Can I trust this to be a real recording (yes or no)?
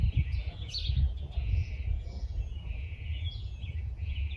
no